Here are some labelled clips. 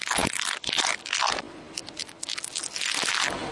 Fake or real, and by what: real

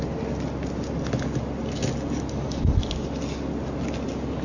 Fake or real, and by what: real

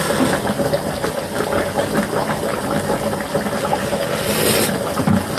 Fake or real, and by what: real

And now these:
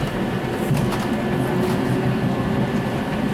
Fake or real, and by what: real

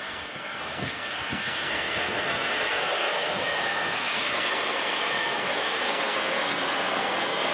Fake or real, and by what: fake, codec, SNAC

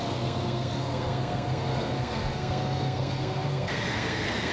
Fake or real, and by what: fake, codec, SNAC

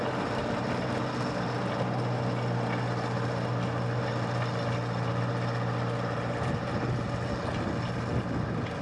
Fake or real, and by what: real